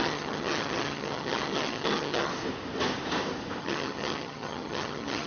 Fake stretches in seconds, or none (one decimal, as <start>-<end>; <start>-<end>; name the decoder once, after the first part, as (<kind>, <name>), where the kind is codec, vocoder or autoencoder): 0.0-2.3 (vocoder, HiFi-GAN); 3.6-5.3